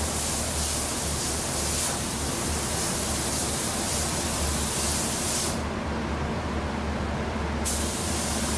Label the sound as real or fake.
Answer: real